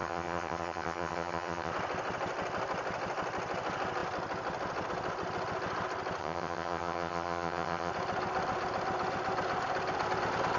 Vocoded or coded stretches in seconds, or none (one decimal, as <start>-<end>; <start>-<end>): 0.0-1.7; 6.2-7.9